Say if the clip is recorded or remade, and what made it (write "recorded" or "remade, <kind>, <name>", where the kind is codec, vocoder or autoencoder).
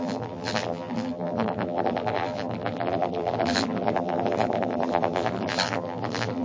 remade, vocoder, BigVGAN v2